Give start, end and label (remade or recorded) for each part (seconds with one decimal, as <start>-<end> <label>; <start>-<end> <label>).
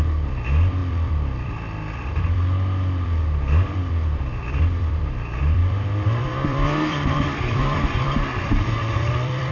0.0-9.5 remade